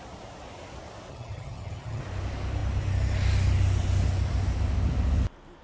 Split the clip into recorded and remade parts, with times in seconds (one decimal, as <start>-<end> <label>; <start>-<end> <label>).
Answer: 0.0-1.1 recorded; 1.1-2.0 remade; 2.0-5.6 recorded

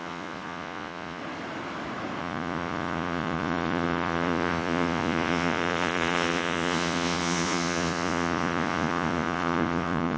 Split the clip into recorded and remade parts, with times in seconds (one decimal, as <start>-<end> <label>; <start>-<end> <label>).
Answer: 0.0-1.2 remade; 1.2-2.2 recorded; 2.2-10.2 remade

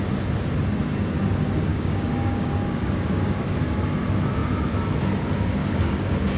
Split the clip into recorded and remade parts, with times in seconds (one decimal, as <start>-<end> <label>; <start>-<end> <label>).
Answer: 0.0-1.7 recorded; 1.7-3.6 remade; 3.6-5.6 recorded; 5.6-6.4 remade